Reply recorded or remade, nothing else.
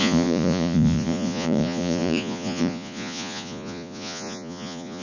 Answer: remade